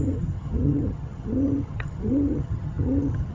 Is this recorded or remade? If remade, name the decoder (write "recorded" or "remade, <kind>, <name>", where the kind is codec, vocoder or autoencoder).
remade, vocoder, HiFi-GAN